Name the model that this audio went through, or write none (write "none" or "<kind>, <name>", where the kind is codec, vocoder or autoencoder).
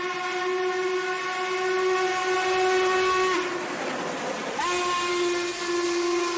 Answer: none